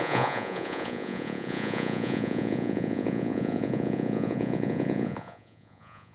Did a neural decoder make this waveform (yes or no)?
yes